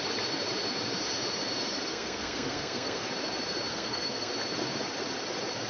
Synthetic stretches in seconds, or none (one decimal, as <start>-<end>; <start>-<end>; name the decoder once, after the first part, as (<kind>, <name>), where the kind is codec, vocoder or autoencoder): 1.9-3.1 (codec, SNAC); 3.7-4.3